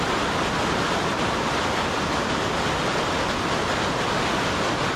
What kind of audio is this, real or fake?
real